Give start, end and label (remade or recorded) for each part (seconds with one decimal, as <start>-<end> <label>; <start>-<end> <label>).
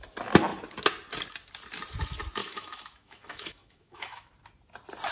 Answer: 0.0-2.4 recorded; 2.4-4.3 remade; 4.3-5.1 recorded